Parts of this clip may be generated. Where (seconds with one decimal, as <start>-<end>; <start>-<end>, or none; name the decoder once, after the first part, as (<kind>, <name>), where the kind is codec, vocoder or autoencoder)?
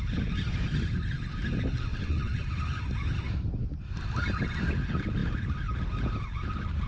1.9-2.4 (vocoder, WaveNeXt)